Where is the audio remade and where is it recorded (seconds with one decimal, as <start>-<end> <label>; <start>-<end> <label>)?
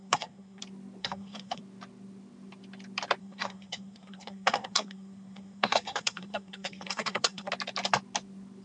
0.0-0.6 remade; 0.6-1.0 recorded; 1.0-1.6 remade; 1.6-3.2 recorded; 3.2-7.5 remade; 7.5-8.6 recorded